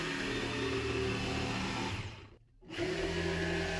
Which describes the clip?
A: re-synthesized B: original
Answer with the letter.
B